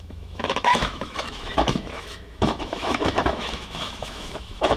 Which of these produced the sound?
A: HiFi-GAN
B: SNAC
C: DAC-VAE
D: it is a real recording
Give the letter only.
C